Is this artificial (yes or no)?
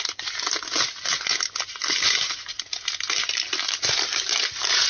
no